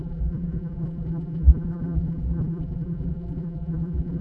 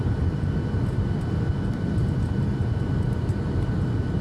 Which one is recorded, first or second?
second